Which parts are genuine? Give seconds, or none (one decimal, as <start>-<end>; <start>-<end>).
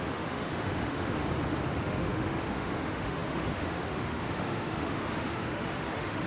1.2-1.8